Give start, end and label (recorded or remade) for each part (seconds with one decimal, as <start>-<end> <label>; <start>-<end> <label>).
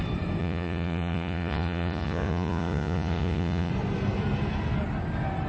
0.0-0.4 recorded; 0.4-3.7 remade; 3.7-5.5 recorded